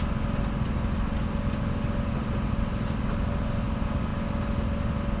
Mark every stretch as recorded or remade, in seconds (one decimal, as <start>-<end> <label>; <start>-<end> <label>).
0.0-5.2 recorded